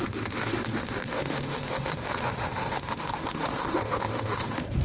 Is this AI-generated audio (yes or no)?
yes